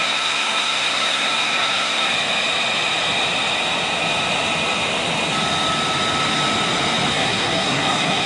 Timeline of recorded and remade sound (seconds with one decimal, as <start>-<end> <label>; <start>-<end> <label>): 0.0-2.1 remade; 2.1-7.1 recorded; 7.1-8.3 remade